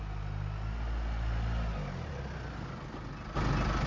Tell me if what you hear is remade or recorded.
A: recorded